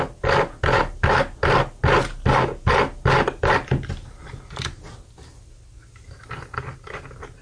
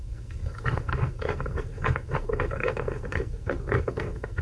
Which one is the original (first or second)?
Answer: first